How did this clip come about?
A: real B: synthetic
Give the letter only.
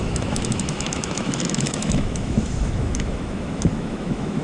B